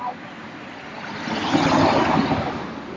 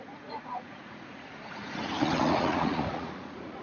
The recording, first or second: first